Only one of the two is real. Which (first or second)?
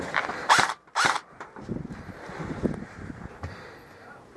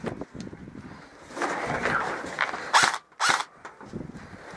second